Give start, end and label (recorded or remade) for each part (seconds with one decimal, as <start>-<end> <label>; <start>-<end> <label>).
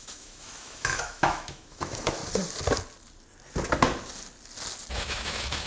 0.0-2.2 remade; 2.2-4.9 recorded; 4.9-5.7 remade